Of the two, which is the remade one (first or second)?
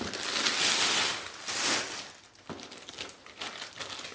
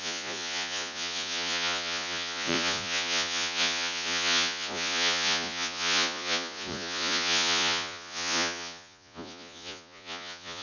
second